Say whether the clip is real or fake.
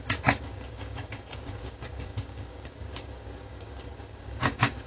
fake